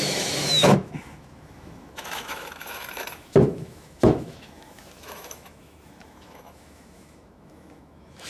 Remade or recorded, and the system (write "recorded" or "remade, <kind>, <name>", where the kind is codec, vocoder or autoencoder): remade, autoencoder, DAC-VAE